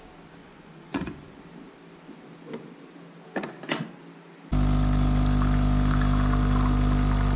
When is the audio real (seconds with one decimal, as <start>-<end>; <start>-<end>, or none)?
0.0-0.4; 1.4-7.4